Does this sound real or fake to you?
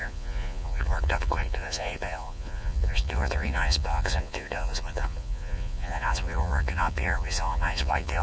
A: fake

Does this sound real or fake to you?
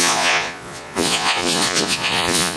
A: fake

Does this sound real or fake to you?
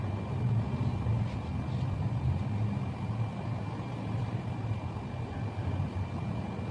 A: real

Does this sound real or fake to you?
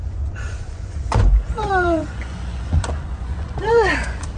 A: fake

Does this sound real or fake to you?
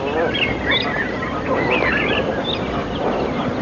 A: real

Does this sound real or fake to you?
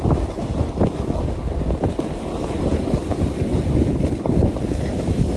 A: real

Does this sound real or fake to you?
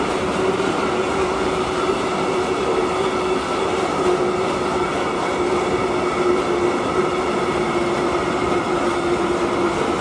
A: real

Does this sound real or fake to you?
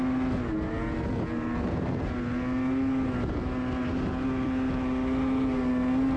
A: real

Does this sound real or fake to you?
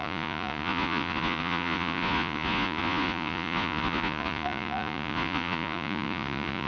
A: fake